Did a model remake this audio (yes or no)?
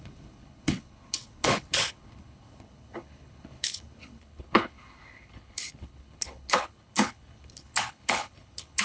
yes